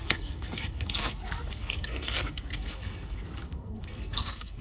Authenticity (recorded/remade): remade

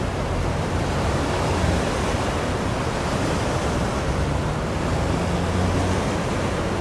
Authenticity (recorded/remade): recorded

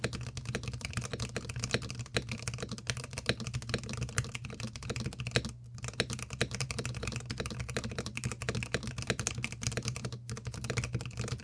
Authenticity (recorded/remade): recorded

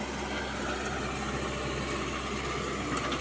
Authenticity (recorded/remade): recorded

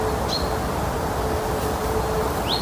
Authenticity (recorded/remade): recorded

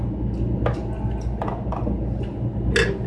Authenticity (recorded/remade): recorded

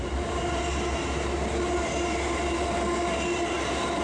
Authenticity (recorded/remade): recorded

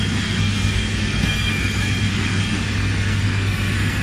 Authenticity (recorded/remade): remade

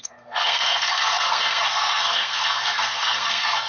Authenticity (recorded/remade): remade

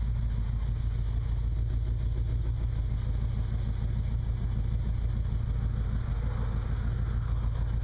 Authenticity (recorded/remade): recorded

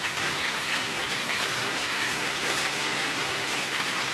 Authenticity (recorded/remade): remade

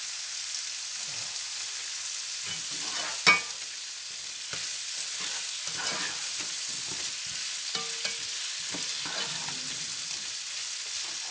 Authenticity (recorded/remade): recorded